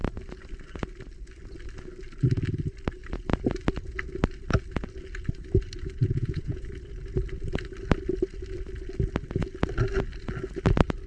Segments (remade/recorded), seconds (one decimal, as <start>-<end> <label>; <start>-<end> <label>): 0.0-6.0 recorded; 6.0-6.7 remade; 6.7-11.1 recorded